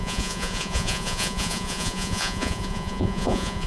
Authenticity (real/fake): fake